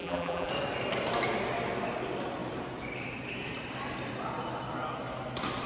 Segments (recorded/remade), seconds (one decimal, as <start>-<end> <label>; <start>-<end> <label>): 0.0-0.5 remade; 0.5-5.7 recorded